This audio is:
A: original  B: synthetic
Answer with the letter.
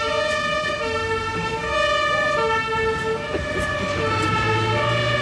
A